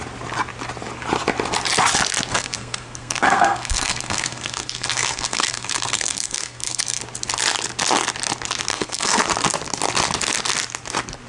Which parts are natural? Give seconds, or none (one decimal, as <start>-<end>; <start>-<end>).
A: 0.0-2.3; 7.0-8.7; 9.2-11.3